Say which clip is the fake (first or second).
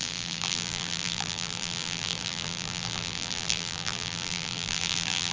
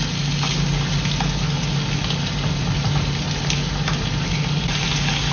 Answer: first